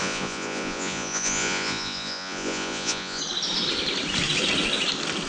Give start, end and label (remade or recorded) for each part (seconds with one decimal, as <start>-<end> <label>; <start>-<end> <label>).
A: 0.0-3.2 remade; 3.2-5.3 recorded